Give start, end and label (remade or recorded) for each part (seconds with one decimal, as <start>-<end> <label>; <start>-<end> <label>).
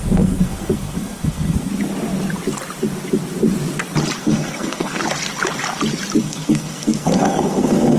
0.0-1.7 remade; 1.7-4.2 recorded; 4.2-5.0 remade; 5.0-6.2 recorded; 6.2-8.0 remade